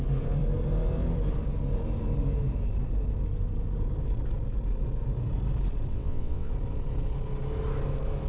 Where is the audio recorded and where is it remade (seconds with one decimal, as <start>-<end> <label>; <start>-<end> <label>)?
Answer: 0.0-5.9 recorded; 5.9-6.5 remade; 6.5-8.3 recorded